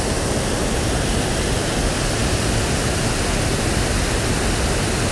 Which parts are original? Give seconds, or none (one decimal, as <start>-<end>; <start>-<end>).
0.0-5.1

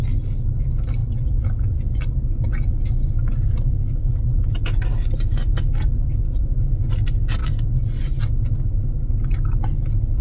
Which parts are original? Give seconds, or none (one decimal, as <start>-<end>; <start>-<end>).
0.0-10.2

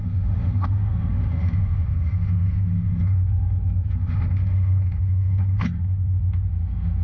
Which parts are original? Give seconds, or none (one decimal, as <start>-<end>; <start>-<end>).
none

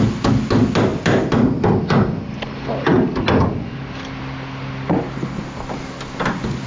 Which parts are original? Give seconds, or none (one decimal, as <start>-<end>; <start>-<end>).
0.0-6.7

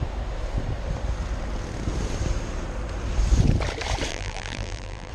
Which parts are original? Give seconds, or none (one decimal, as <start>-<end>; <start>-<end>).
0.0-4.1

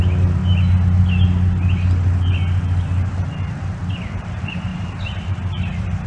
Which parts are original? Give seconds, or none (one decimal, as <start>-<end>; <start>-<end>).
0.4-4.1; 4.7-6.1

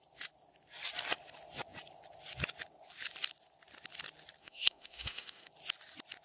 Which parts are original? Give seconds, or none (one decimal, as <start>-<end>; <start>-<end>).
0.0-4.4; 5.5-6.2

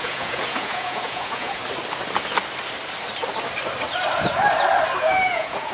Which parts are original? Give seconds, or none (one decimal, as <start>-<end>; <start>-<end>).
1.6-5.0